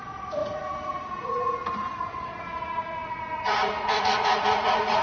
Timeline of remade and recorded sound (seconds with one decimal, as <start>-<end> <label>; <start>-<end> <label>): 0.0-5.0 remade